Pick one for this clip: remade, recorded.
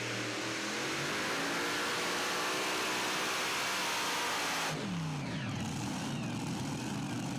recorded